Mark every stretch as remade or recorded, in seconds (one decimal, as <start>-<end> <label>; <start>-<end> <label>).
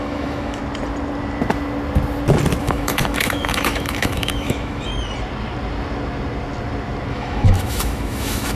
0.0-0.6 remade; 0.6-2.6 recorded; 2.6-4.9 remade; 4.9-7.1 recorded; 7.1-8.5 remade